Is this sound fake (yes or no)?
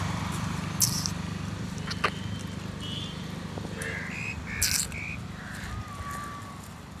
no